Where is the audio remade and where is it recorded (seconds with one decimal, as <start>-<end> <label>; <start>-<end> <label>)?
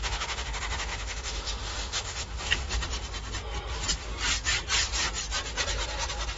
0.0-2.6 remade; 2.6-6.4 recorded